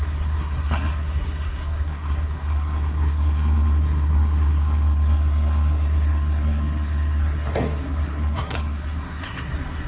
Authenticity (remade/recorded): remade